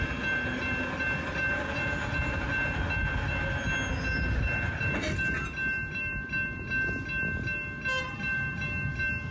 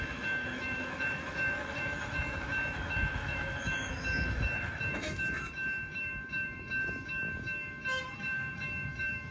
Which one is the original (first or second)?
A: first